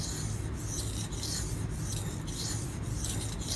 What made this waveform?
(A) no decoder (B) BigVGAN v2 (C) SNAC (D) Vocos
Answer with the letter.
A